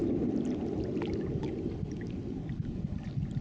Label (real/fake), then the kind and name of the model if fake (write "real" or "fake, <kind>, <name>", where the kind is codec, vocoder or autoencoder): real